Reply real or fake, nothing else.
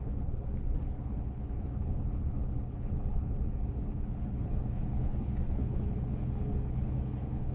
fake